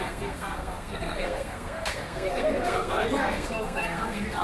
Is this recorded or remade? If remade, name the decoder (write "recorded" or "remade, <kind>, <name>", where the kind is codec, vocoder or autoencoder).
remade, codec, SNAC